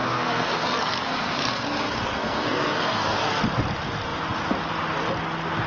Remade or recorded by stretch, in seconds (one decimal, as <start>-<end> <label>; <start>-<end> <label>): 0.0-3.4 remade; 3.4-5.7 recorded